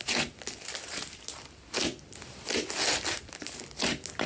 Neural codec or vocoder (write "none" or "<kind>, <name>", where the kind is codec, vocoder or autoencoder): none